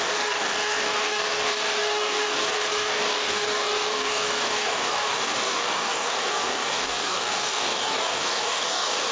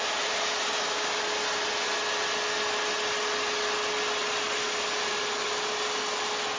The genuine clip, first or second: second